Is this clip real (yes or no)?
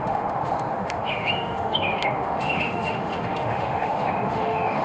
no